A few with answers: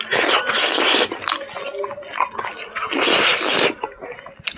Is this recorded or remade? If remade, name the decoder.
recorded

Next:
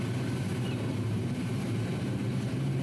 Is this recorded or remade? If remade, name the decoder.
remade, vocoder, BigVGAN v2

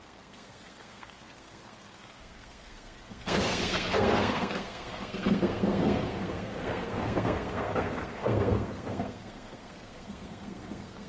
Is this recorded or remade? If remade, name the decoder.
remade, codec, SNAC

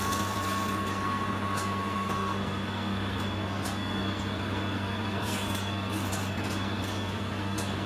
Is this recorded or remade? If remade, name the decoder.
remade, codec, SNAC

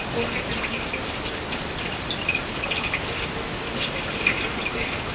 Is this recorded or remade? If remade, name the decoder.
recorded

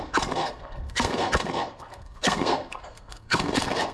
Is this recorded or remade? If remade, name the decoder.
remade, codec, SNAC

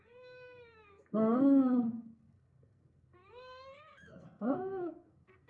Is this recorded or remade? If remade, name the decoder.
remade, codec, SNAC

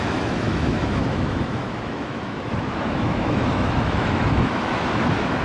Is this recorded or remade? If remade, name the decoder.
remade, autoencoder, DAC-VAE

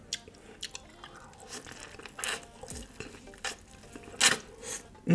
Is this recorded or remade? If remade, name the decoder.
recorded